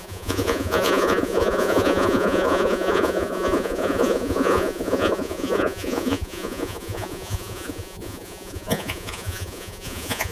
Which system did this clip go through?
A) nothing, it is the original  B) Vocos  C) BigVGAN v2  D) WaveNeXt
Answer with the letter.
B